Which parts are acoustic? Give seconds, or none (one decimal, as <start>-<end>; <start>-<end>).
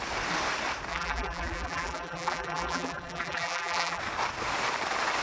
0.0-0.9; 4.0-5.2